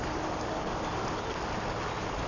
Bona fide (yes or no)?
yes